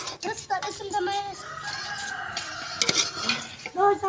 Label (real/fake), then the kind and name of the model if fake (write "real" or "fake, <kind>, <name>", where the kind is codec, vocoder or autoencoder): real